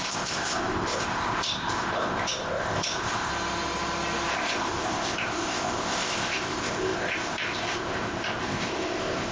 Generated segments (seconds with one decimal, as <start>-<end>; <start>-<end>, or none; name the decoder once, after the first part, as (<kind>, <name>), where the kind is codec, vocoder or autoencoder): 0.0-3.3 (codec, ZipCodec); 4.3-9.3